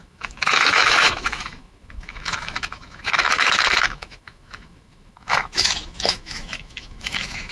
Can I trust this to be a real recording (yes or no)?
no